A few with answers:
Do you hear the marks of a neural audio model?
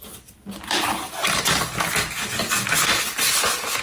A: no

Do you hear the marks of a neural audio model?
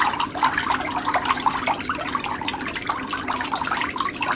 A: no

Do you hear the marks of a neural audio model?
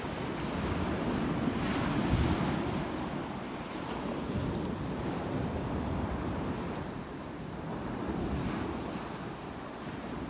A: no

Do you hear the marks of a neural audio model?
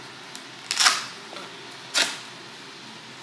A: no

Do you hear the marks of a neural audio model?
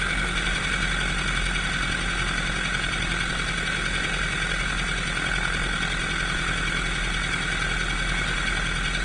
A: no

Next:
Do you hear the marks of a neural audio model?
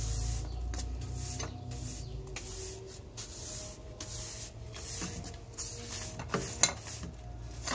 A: no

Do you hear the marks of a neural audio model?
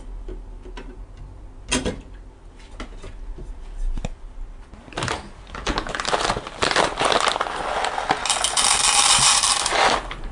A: no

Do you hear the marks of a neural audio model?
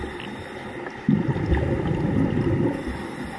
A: no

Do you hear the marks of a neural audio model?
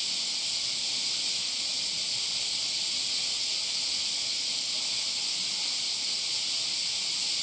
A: no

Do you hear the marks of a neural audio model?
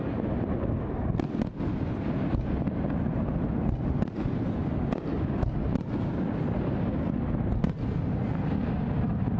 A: no